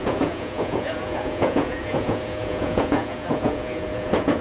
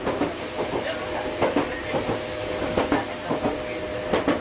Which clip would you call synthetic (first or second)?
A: first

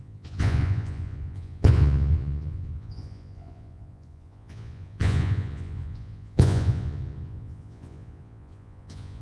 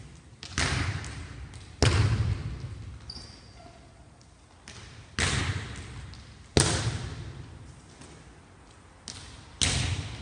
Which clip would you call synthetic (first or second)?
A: first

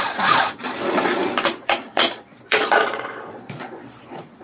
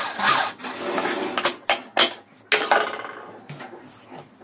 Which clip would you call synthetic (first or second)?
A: first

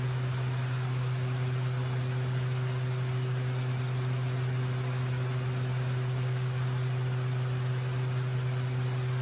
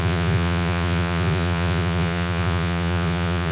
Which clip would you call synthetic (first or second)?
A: second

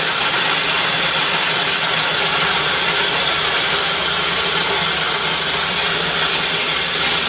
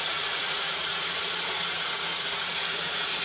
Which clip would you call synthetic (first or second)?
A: second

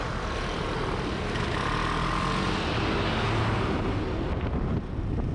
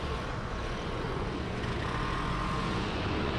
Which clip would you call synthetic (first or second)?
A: second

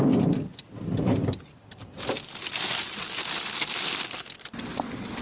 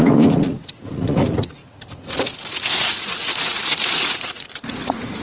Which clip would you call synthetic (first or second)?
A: second